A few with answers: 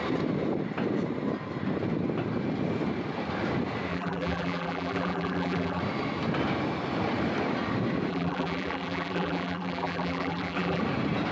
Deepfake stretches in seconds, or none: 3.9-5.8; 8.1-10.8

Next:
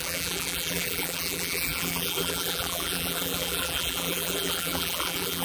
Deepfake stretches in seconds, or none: 0.0-5.4